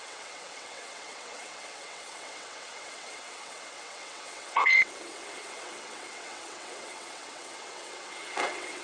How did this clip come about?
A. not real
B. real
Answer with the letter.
A